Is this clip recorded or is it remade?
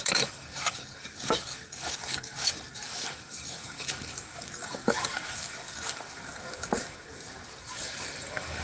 remade